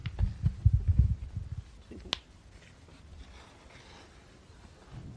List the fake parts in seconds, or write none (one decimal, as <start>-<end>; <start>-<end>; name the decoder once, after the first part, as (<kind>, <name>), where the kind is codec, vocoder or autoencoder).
none